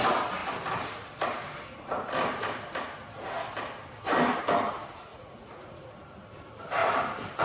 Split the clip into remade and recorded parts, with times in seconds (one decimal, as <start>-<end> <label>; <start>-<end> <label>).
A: 0.0-5.1 recorded; 5.1-5.9 remade; 5.9-7.4 recorded